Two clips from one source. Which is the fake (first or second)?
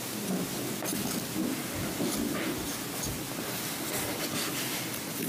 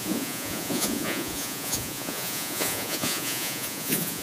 second